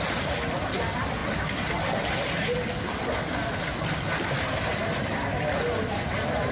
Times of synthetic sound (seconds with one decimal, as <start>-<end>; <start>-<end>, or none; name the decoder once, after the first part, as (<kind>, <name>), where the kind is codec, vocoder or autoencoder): none